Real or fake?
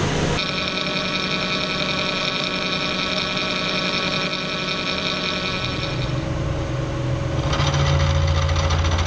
real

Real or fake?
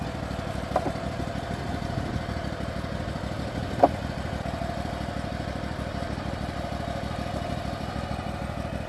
real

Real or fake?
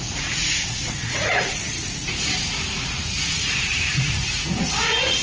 fake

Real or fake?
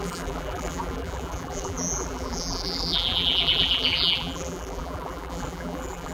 fake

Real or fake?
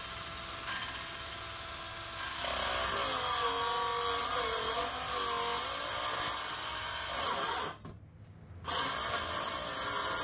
real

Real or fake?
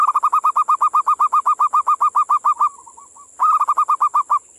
real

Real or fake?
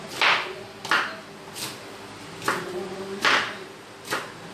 real